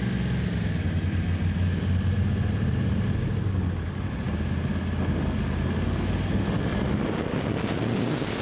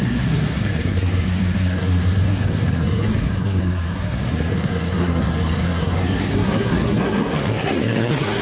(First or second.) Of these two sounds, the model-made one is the second